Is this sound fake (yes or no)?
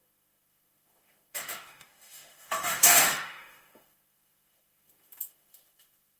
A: yes